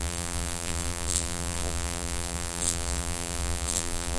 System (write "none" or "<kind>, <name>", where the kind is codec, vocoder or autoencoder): vocoder, BigVGAN v2